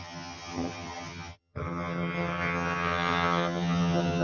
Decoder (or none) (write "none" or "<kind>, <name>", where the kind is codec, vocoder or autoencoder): vocoder, HiFi-GAN